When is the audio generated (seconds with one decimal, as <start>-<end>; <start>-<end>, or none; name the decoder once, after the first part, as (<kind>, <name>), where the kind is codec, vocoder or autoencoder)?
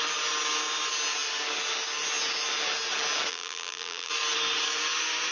3.3-4.1 (vocoder, BigVGAN v2)